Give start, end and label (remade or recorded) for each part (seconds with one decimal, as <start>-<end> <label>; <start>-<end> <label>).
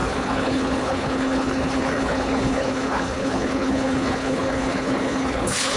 0.0-5.8 remade